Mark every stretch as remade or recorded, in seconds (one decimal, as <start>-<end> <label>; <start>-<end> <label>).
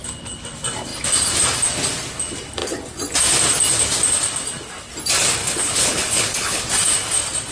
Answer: 0.0-5.4 recorded; 5.4-6.6 remade; 6.6-7.5 recorded